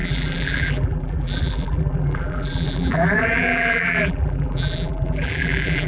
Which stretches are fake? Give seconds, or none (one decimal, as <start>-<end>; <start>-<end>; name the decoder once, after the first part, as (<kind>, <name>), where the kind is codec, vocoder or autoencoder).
0.0-5.9 (vocoder, BigVGAN v2)